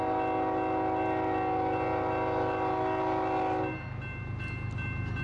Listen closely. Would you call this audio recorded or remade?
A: recorded